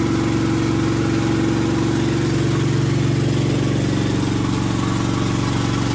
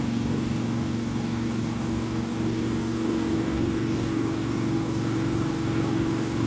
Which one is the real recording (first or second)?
first